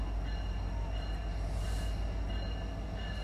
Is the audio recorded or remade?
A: recorded